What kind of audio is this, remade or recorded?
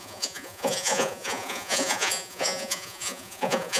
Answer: remade